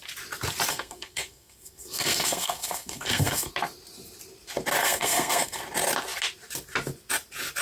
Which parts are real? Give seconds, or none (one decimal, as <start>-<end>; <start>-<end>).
0.0-0.7; 3.5-4.8; 5.6-7.6